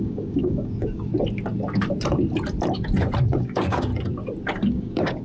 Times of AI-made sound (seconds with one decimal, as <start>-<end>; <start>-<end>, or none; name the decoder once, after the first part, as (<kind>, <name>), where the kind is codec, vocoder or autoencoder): 0.0-1.1 (codec, DAC); 3.3-3.9; 4.7-5.2

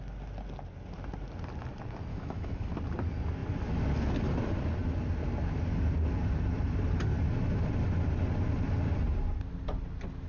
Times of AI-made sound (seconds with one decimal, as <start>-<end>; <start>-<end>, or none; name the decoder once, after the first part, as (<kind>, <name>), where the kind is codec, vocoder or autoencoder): 2.1-2.7 (autoencoder, DAC-VAE)

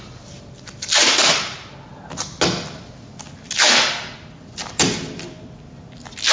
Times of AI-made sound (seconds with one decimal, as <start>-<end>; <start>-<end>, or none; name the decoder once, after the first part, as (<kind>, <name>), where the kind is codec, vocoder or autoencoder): none

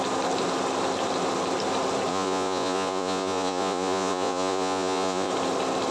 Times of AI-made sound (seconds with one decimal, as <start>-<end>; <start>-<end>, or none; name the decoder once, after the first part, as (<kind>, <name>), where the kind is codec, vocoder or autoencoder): 2.1-5.3 (vocoder, Vocos)